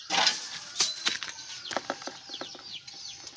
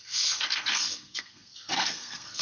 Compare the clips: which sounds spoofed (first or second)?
second